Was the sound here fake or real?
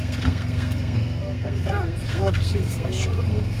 fake